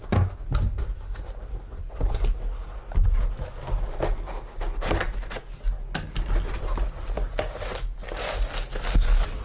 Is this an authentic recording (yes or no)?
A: yes